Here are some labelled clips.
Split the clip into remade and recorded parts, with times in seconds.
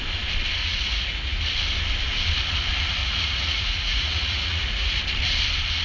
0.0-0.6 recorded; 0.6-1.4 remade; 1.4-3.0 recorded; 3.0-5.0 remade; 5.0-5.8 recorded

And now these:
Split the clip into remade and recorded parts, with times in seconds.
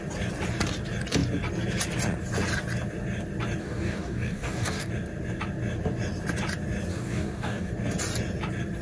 0.0-3.6 recorded; 3.6-4.9 remade; 4.9-6.9 recorded; 6.9-7.7 remade; 7.7-8.8 recorded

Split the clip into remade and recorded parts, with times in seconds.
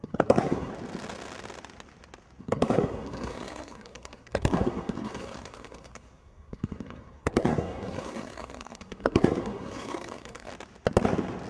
0.0-0.7 remade; 0.7-2.4 recorded; 2.4-10.5 remade; 10.5-11.5 recorded